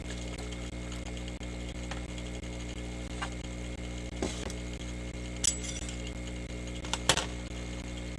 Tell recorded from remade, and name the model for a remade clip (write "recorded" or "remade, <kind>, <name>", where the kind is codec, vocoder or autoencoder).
recorded